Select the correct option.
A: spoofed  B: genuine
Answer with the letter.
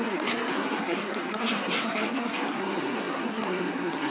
A